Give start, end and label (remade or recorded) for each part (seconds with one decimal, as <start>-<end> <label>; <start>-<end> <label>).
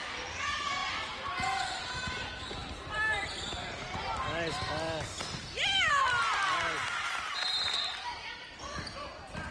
0.0-9.5 recorded